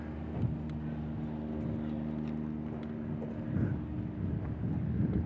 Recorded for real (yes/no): yes